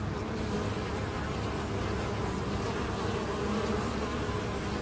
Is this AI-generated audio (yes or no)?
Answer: no